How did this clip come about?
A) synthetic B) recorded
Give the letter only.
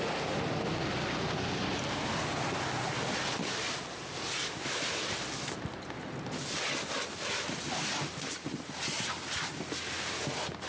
B